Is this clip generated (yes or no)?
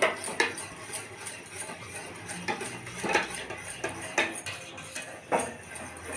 no